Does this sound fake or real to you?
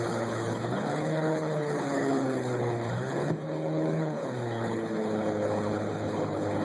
fake